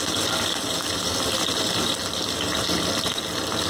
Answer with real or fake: real